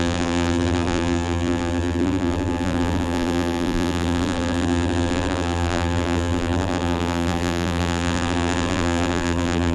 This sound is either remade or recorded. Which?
remade